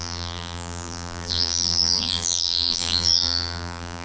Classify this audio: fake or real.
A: fake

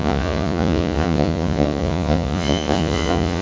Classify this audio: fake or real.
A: fake